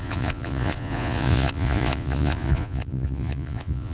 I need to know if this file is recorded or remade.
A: remade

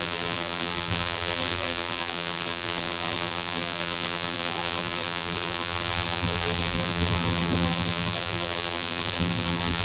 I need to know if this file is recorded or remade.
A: remade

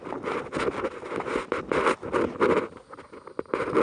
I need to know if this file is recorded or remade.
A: recorded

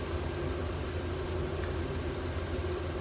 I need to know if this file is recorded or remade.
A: recorded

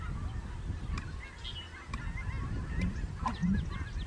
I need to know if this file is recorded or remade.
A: recorded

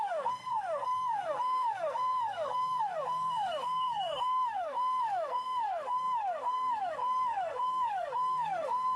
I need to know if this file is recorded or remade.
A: remade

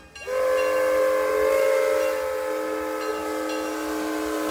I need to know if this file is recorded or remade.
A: recorded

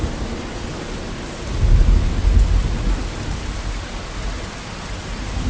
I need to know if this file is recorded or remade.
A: recorded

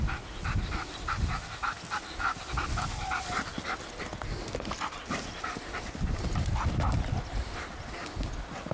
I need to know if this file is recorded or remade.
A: recorded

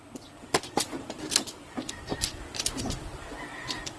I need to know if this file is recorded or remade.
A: remade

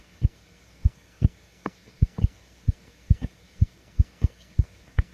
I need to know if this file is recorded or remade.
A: remade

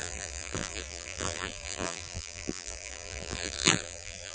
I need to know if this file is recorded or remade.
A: remade